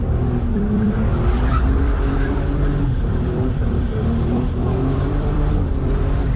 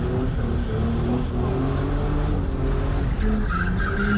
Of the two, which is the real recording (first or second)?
second